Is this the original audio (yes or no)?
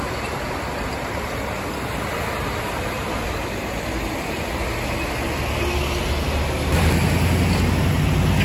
yes